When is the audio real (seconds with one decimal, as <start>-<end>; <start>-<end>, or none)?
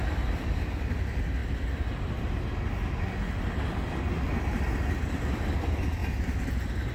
0.0-6.9